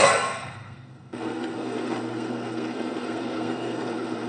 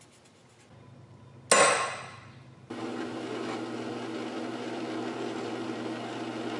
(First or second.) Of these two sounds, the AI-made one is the first